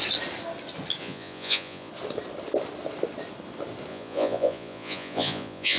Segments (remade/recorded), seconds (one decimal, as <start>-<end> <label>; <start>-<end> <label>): 0.0-1.0 recorded; 1.0-1.9 remade; 1.9-3.9 recorded; 3.9-5.8 remade